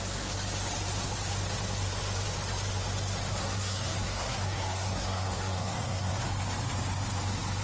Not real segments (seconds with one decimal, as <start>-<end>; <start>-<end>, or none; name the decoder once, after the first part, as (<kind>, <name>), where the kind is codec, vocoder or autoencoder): 3.4-6.2 (codec, SNAC)